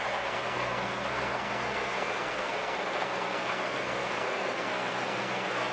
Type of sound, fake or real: fake